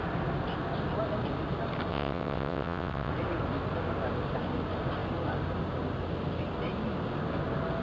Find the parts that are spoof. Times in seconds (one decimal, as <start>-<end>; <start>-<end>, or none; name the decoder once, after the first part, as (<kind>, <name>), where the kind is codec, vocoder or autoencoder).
1.9-3.1 (vocoder, WaveNeXt)